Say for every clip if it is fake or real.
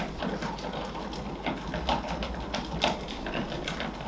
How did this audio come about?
real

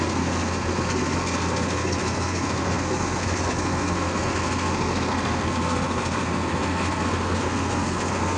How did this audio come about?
fake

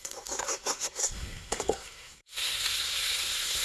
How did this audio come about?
fake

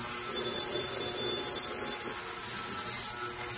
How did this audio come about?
real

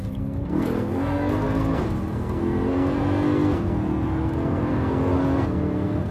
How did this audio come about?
fake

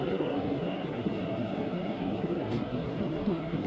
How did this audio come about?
fake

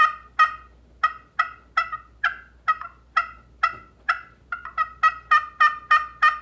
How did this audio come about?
real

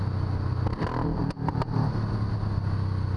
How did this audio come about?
real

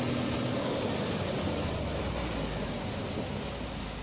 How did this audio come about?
real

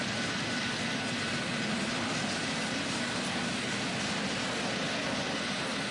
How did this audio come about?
real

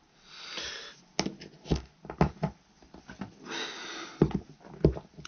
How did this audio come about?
real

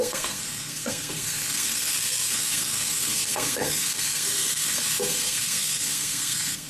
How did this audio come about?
fake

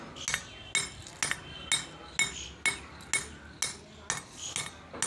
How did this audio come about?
real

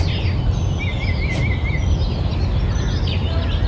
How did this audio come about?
real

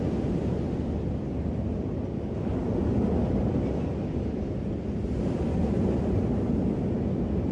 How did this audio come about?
real